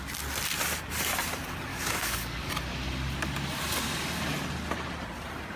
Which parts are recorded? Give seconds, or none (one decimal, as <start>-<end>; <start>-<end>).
0.0-1.7; 2.5-5.6